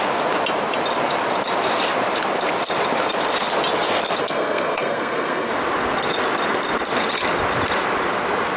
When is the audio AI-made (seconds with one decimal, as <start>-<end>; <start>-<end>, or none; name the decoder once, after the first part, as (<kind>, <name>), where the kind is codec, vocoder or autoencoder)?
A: 4.2-5.5 (codec, SNAC)